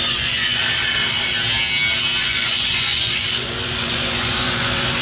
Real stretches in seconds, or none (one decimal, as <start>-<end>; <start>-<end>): 0.6-2.2